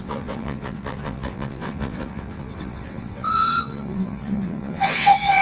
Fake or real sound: fake